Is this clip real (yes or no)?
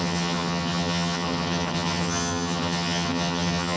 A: no